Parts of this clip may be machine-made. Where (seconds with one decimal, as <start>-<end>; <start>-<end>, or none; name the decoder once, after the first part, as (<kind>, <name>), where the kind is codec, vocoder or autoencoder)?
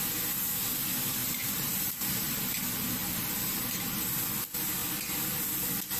1.2-2.4 (vocoder, BigVGAN v2)